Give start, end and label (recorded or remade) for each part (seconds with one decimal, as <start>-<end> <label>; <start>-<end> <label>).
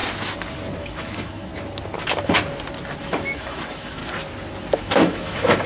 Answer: 0.0-0.8 recorded; 0.8-1.5 remade; 1.5-3.0 recorded; 3.0-4.0 remade; 4.0-4.8 recorded; 4.8-5.7 remade